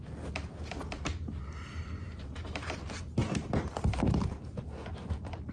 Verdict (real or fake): real